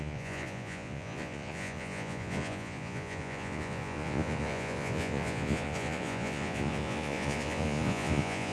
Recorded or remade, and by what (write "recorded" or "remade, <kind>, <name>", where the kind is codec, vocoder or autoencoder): remade, vocoder, Vocos